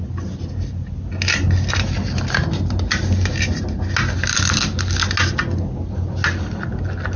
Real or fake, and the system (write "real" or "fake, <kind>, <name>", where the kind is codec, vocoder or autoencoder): real